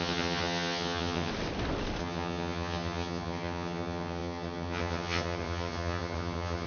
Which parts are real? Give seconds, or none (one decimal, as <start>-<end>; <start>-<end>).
1.3-2.0